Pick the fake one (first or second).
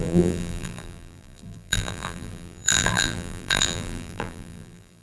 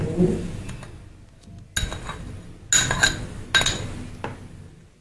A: first